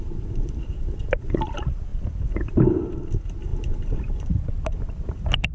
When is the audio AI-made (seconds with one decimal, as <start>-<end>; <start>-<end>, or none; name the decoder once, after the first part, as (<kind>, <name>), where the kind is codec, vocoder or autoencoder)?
0.0-1.0 (vocoder, BigVGAN v2); 3.5-4.5